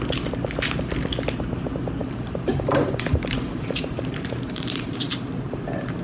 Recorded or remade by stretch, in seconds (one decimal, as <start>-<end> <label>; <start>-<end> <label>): 0.0-2.0 recorded; 2.0-5.6 remade; 5.6-6.0 recorded